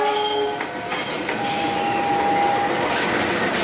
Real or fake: real